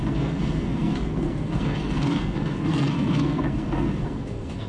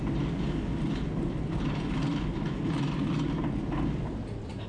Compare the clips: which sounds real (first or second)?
second